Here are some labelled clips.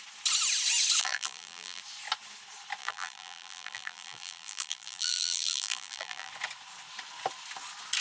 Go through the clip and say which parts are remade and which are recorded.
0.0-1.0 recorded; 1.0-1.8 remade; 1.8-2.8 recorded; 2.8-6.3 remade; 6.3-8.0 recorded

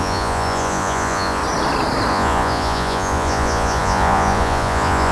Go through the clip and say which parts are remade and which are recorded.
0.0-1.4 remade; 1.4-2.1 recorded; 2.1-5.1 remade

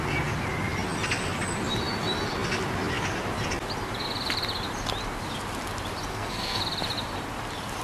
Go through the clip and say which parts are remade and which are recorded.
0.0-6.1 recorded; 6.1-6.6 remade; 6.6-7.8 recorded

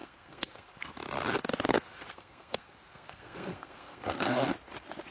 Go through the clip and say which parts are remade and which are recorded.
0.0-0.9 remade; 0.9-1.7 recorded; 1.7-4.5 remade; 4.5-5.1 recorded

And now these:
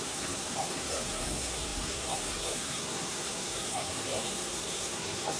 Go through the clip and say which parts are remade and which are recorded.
0.0-5.4 remade